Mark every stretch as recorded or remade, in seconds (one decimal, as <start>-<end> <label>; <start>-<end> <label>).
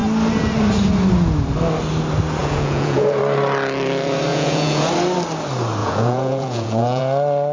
0.0-2.4 recorded; 2.4-3.2 remade; 3.2-4.3 recorded; 4.3-4.9 remade; 4.9-5.8 recorded; 5.8-7.0 remade; 7.0-7.5 recorded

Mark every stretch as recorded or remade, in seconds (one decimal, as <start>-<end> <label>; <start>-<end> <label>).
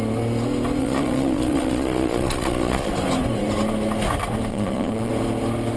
0.0-0.8 recorded; 0.8-2.9 remade; 2.9-4.5 recorded; 4.5-5.1 remade; 5.1-5.8 recorded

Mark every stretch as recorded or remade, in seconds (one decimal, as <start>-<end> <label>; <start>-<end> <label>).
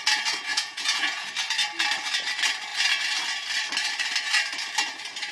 0.0-0.5 recorded; 0.5-1.3 remade; 1.3-5.3 recorded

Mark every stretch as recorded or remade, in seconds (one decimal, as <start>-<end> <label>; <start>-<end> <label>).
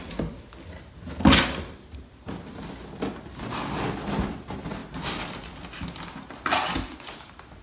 0.0-7.6 recorded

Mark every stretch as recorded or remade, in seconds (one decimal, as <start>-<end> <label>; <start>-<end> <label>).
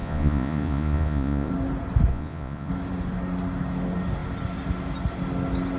0.0-1.5 remade; 1.5-2.1 recorded; 2.1-2.7 remade; 2.7-5.8 recorded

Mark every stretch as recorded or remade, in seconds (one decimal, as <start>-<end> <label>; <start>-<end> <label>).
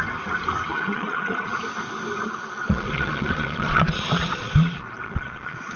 0.0-0.7 recorded; 0.7-1.6 remade; 1.6-2.6 recorded; 2.6-5.8 remade